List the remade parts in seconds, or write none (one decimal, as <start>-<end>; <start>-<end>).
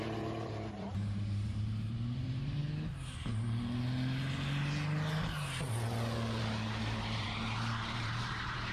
0.0-2.6; 6.4-8.7